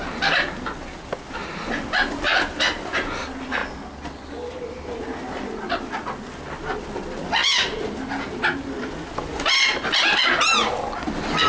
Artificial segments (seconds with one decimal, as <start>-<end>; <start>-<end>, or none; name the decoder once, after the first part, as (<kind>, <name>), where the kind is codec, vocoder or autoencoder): none